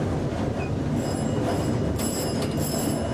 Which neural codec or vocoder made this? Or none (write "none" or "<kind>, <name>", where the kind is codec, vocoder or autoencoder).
none